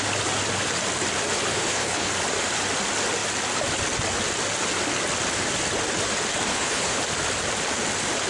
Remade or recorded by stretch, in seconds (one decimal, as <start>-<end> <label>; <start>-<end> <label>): 0.0-1.5 recorded; 1.5-2.1 remade; 2.1-6.5 recorded; 6.5-7.0 remade; 7.0-8.3 recorded